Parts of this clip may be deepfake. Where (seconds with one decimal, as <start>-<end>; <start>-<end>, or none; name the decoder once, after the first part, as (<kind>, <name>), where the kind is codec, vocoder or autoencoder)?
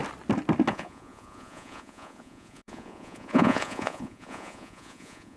0.7-5.4 (vocoder, Vocos)